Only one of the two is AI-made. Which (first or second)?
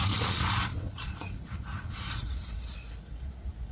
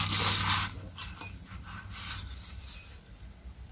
first